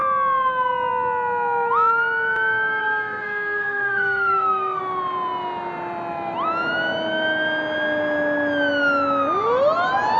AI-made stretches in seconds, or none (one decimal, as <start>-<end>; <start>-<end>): 2.8-4.8